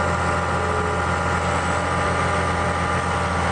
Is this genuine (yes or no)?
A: yes